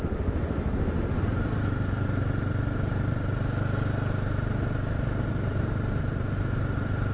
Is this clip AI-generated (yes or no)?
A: no